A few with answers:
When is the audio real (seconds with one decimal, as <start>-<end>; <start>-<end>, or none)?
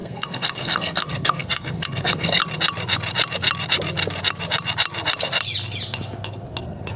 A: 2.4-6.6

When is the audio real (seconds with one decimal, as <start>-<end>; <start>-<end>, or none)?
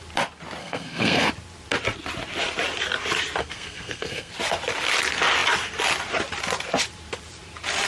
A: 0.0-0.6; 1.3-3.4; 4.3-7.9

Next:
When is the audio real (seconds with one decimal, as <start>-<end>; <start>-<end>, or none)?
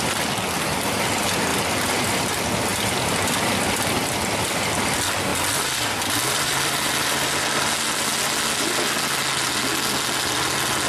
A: 0.0-1.5; 2.2-2.7; 4.8-5.3; 6.9-10.9